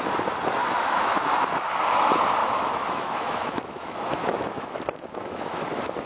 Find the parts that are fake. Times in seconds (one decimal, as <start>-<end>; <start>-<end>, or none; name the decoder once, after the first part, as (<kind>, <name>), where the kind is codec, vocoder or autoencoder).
0.6-1.2 (autoencoder, DAC-VAE); 2.4-6.1